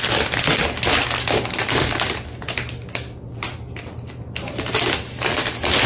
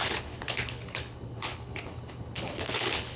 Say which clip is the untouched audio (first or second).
first